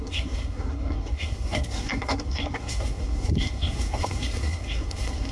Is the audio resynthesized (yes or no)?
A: yes